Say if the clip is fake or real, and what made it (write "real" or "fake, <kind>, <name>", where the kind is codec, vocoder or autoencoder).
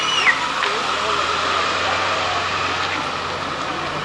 real